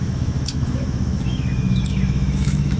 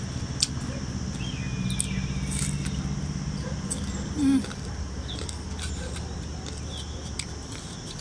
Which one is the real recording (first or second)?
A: second